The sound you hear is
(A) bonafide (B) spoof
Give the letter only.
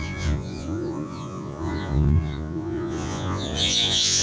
B